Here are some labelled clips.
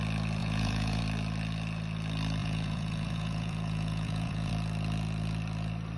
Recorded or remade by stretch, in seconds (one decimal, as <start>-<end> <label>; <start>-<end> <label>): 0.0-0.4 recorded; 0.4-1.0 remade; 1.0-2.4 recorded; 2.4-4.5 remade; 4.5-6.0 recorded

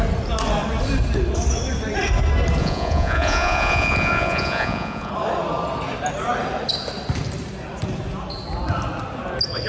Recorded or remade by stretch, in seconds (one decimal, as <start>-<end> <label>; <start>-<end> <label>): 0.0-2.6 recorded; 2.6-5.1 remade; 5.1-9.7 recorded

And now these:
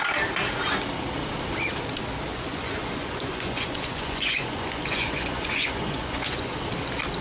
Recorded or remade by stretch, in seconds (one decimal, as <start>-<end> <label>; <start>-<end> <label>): 0.0-2.3 recorded; 2.3-6.6 remade; 6.6-7.2 recorded

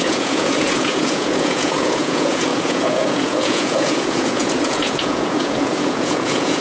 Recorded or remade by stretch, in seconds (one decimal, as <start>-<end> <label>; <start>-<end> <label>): 0.0-6.6 remade